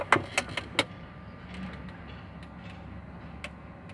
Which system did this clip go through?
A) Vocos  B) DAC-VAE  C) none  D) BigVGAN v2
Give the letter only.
C